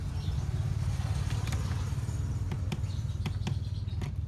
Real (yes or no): yes